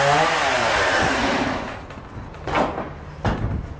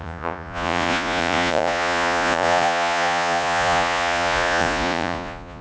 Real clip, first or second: first